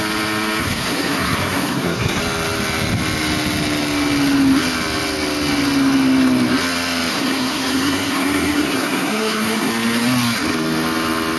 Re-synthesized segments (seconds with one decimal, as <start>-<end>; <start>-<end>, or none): 0.6-2.2; 7.1-9.7